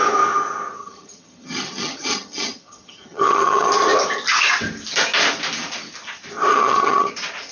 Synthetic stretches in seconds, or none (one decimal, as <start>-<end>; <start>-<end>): 0.8-3.7; 6.5-7.1